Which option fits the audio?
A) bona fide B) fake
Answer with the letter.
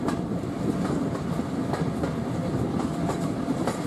B